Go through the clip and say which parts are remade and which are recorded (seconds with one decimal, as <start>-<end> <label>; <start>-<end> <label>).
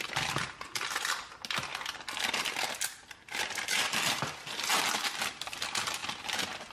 0.0-6.7 recorded